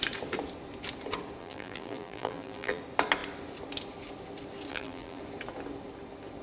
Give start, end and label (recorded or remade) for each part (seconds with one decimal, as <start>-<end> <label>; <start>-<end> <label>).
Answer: 0.0-1.4 recorded; 1.4-2.8 remade; 2.8-4.7 recorded; 4.7-5.2 remade; 5.2-6.4 recorded